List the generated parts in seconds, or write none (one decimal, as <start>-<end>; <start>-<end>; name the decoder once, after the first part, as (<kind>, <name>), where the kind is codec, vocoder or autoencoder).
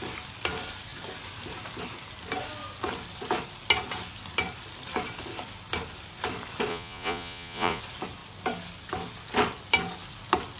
6.7-7.8 (vocoder, Vocos)